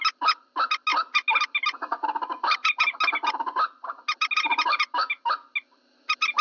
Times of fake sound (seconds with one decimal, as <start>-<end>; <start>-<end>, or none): none